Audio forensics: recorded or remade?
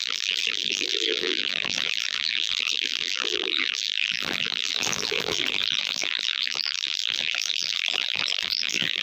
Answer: remade